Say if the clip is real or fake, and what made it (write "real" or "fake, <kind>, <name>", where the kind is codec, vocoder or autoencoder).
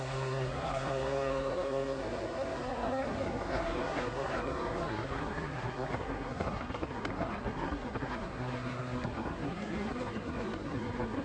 fake, codec, SNAC